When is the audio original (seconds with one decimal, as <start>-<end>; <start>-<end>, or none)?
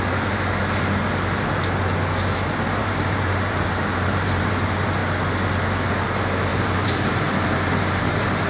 0.0-2.8; 4.5-6.5